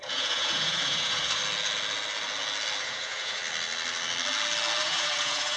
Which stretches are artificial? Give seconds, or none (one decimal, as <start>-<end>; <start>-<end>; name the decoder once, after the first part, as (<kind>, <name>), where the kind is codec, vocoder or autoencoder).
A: 0.0-1.4 (vocoder, Vocos); 2.8-3.4; 4.8-5.6